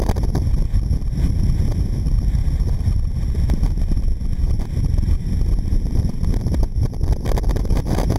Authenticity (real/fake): fake